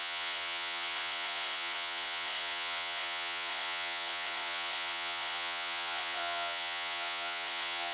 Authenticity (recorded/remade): remade